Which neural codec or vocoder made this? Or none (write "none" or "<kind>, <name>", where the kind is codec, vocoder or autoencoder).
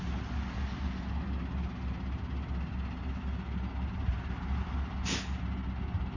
none